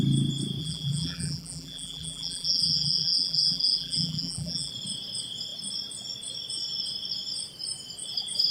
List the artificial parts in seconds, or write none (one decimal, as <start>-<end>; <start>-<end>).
0.6-4.7